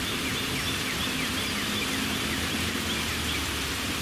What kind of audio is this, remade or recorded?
recorded